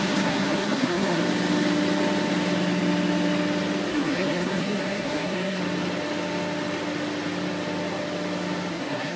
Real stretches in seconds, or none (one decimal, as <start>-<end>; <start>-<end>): 1.2-3.9; 5.6-8.7

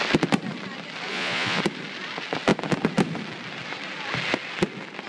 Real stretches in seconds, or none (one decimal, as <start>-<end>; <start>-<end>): 0.0-1.1; 1.6-5.1